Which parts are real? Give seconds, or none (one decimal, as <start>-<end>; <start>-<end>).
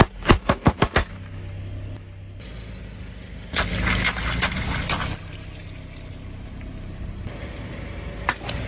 0.0-0.4; 1.1-8.7